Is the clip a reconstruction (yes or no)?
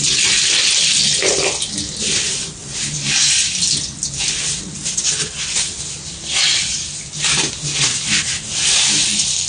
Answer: no